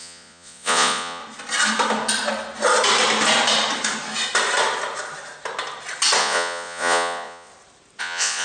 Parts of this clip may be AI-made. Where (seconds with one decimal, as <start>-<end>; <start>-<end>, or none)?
0.0-1.2; 6.2-7.5; 8.0-8.4